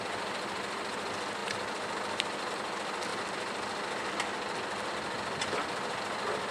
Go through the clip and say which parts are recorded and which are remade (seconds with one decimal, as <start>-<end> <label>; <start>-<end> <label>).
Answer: 0.0-6.5 recorded